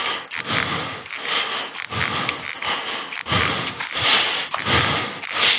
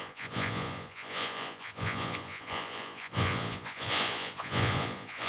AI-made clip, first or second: second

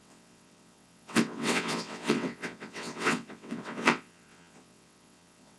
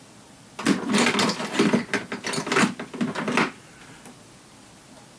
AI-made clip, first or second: first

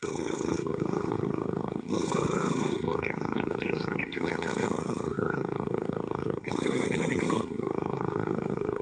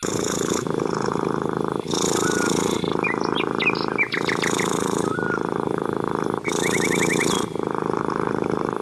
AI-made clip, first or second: first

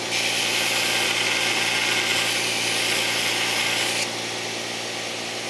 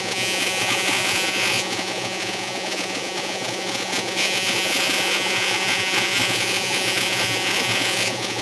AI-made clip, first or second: second